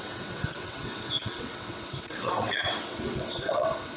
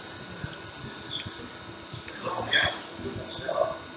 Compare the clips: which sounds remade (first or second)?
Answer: first